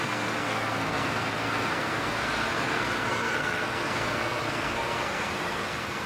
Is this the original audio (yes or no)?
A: no